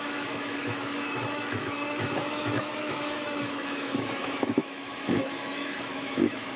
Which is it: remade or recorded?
remade